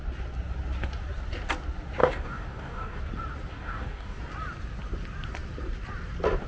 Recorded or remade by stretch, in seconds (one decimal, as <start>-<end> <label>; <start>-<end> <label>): 0.0-2.0 recorded; 2.0-3.0 remade; 3.0-3.5 recorded; 3.5-4.2 remade; 4.2-6.5 recorded